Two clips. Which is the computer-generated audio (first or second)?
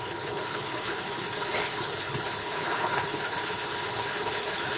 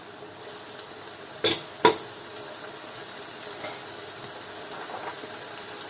first